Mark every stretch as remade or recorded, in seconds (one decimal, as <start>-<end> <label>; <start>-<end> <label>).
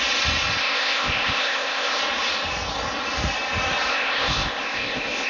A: 0.0-0.6 recorded; 0.6-2.0 remade; 2.0-3.9 recorded; 3.9-5.3 remade